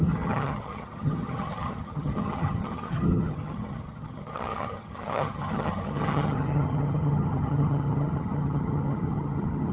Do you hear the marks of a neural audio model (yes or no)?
yes